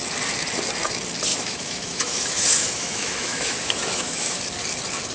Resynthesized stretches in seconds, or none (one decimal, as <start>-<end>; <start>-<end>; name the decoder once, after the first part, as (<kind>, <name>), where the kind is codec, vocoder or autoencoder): 1.3-4.4 (autoencoder, DAC-VAE)